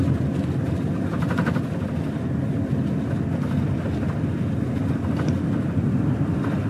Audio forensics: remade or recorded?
recorded